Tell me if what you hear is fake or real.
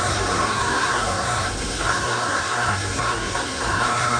fake